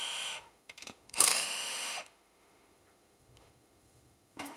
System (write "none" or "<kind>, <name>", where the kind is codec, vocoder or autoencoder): autoencoder, DAC-VAE